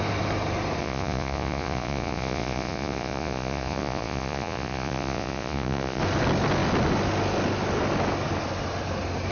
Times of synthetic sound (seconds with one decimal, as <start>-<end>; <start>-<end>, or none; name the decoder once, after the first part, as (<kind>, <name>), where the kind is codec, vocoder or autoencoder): 0.8-6.0 (vocoder, Vocos)